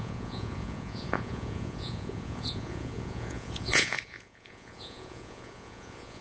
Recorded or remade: remade